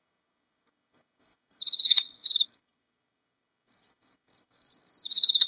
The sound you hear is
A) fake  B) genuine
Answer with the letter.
A